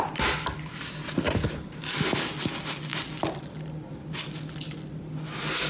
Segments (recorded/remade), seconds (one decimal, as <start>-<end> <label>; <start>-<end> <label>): 0.0-5.7 recorded

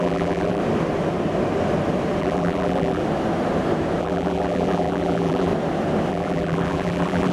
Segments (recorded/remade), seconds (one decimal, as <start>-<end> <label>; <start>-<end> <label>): 0.0-0.6 remade; 0.6-2.2 recorded; 2.2-3.0 remade; 3.0-4.0 recorded; 4.0-5.5 remade; 5.5-6.1 recorded; 6.1-7.3 remade

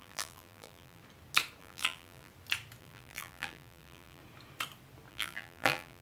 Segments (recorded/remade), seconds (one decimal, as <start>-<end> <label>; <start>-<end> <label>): 0.0-1.0 remade; 1.0-1.6 recorded; 1.6-2.3 remade; 2.3-2.8 recorded; 2.8-4.2 remade; 4.2-5.1 recorded; 5.1-6.0 remade

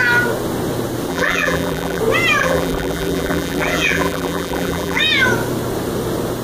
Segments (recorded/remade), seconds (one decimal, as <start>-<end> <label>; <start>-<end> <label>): 0.0-1.1 recorded; 1.1-2.0 remade; 2.0-2.4 recorded; 2.4-5.0 remade; 5.0-6.4 recorded

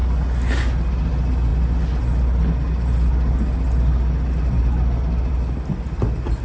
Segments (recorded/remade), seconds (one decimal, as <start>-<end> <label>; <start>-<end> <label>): 0.0-6.4 recorded

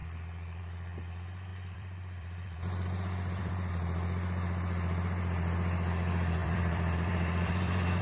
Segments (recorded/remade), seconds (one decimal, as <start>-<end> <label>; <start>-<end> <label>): 0.0-1.5 recorded; 1.5-3.7 remade; 3.7-6.4 recorded; 6.4-8.0 remade

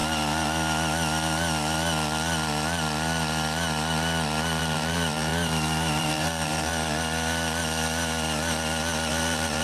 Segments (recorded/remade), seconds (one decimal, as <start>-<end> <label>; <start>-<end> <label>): 0.0-4.6 recorded; 4.6-5.3 remade; 5.3-6.0 recorded; 6.0-6.7 remade; 6.7-9.1 recorded; 9.1-9.6 remade

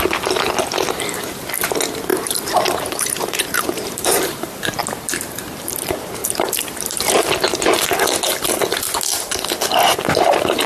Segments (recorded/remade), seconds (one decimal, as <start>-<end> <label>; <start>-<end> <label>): 0.0-2.1 recorded; 2.1-5.6 remade; 5.6-6.2 recorded; 6.2-7.0 remade; 7.0-10.7 recorded